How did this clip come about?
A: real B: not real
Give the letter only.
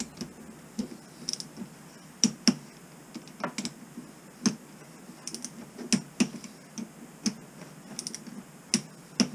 A